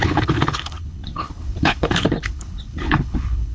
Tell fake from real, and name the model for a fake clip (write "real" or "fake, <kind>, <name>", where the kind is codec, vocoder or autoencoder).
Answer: fake, codec, HILCodec